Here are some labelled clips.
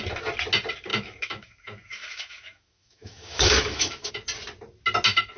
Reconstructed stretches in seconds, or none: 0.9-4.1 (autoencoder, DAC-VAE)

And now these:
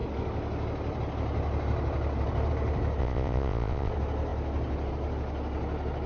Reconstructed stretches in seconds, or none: 3.0-3.9 (vocoder, Vocos)

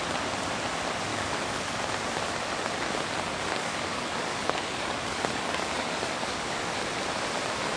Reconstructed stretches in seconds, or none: 1.1-1.8 (codec, DAC); 3.3-6.8

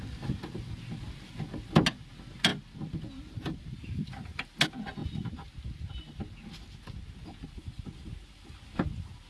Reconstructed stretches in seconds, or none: none